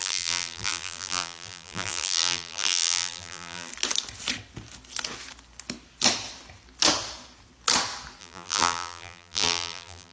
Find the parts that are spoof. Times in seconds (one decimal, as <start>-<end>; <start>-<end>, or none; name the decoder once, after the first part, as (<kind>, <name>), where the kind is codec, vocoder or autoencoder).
0.0-3.7 (vocoder, BigVGAN v2); 8.2-10.1